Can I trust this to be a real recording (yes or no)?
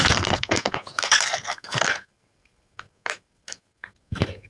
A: no